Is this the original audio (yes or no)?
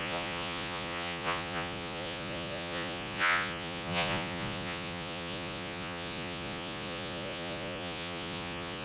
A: no